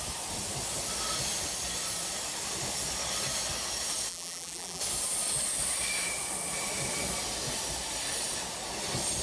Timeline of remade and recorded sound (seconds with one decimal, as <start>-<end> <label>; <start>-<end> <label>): 0.0-4.1 recorded; 4.1-4.8 remade; 4.8-9.2 recorded